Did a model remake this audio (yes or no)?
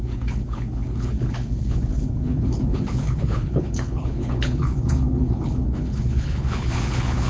yes